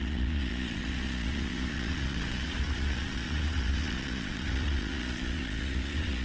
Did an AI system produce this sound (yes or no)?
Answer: yes